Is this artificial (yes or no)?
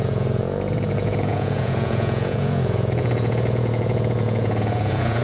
yes